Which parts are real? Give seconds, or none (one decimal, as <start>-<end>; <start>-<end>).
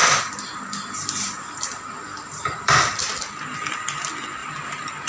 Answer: 3.1-4.4